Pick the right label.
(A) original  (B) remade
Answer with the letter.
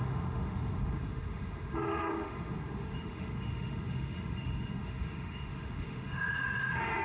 B